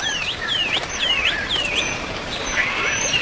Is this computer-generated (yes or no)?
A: yes